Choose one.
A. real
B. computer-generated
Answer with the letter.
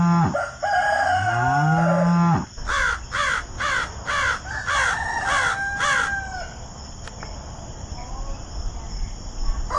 A